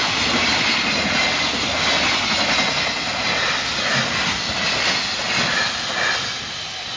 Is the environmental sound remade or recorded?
recorded